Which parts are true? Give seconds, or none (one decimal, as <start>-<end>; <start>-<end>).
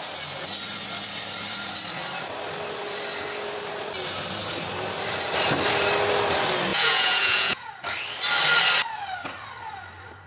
0.0-6.7; 7.7-10.3